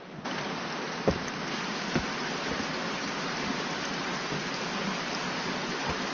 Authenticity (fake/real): real